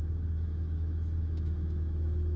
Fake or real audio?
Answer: fake